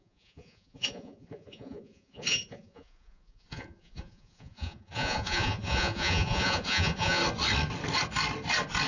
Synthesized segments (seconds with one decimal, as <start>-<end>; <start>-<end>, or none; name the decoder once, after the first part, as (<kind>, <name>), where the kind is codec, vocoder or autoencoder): 0.0-7.2 (vocoder, Vocos)